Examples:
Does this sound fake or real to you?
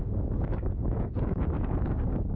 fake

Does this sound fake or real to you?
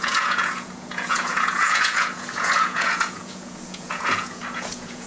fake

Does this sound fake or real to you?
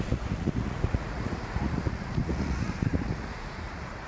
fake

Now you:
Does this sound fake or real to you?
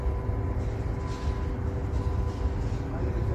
real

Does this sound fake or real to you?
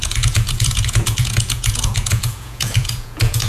fake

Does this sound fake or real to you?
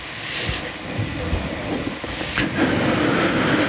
real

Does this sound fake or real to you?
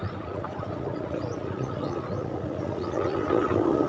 fake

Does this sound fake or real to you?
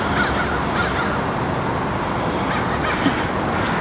real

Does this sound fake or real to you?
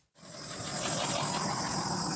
real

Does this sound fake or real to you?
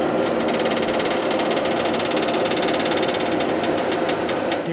fake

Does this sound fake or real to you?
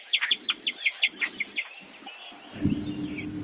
real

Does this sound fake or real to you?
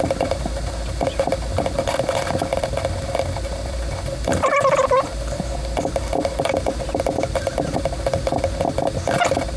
fake